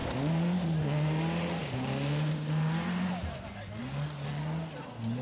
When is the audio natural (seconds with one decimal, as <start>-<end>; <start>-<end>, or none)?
0.0-5.2